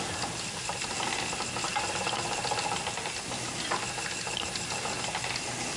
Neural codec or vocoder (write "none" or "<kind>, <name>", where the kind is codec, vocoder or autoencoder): none